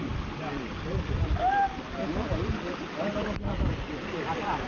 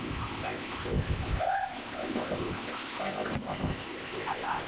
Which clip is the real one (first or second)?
first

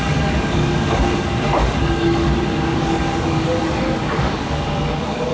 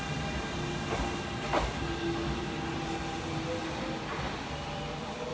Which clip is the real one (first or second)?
second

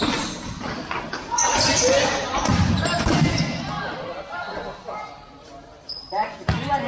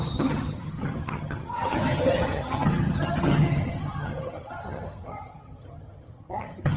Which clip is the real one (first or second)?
first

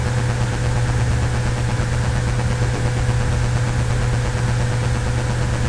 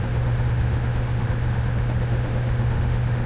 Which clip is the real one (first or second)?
first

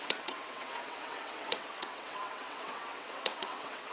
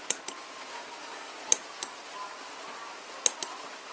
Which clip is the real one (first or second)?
second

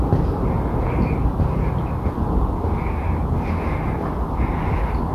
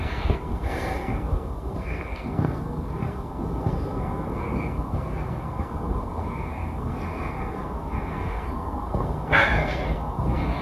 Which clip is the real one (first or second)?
first